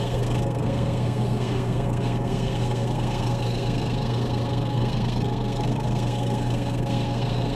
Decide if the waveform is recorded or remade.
remade